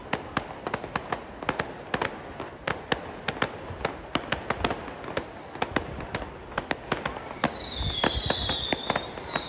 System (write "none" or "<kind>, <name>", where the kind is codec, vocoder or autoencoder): none